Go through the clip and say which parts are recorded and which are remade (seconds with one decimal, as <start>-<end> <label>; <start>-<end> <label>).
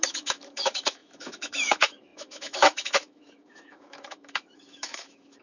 0.0-5.4 remade